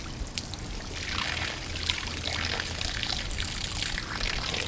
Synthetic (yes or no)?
no